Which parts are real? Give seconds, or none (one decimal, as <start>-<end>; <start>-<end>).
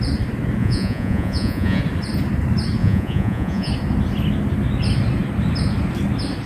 0.0-0.6; 1.8-2.8; 3.7-6.5